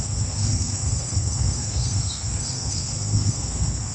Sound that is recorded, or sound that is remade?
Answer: remade